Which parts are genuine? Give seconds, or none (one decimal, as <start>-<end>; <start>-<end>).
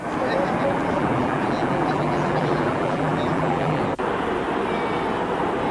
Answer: 0.0-0.6; 3.8-5.7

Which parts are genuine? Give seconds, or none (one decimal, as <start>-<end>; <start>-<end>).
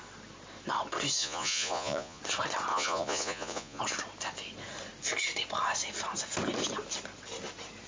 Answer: 0.0-1.2; 2.2-2.7; 3.8-7.9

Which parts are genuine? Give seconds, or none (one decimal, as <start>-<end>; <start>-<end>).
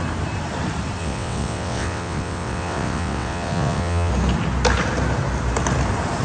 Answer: 0.0-1.0; 4.1-6.2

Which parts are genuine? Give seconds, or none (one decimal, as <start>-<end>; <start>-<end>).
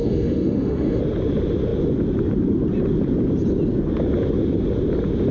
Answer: 1.0-5.3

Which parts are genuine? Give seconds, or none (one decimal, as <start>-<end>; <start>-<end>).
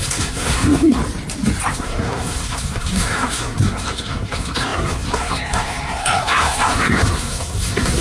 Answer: 1.0-1.7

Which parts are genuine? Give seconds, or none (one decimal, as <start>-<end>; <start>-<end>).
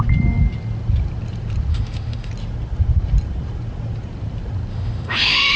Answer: 0.0-1.7; 2.3-4.7